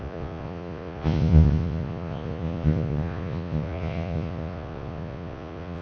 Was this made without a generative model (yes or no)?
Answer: no